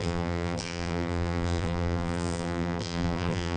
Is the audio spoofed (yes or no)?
yes